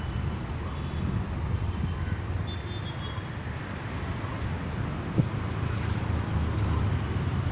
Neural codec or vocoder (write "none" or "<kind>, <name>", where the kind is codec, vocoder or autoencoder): none